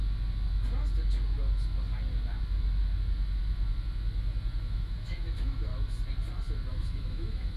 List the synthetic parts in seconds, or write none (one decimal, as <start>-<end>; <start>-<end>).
4.6-5.7; 6.7-7.6